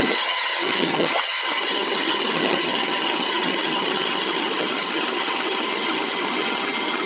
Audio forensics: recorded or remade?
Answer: remade